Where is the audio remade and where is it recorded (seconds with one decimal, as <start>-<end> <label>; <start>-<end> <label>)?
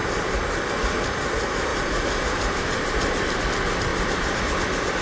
0.0-1.7 recorded; 1.7-3.4 remade; 3.4-3.9 recorded; 3.9-4.4 remade; 4.4-5.0 recorded